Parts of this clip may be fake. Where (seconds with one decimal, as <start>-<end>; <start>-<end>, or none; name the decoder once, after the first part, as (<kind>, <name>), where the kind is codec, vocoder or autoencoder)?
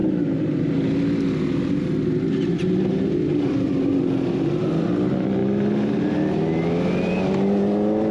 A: none